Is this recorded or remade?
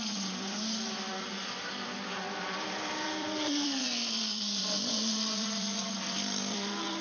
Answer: remade